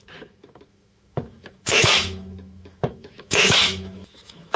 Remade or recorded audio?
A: remade